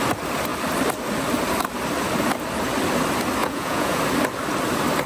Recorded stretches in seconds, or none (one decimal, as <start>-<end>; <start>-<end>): 0.0-3.4; 4.0-5.1